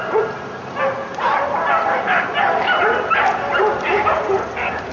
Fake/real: real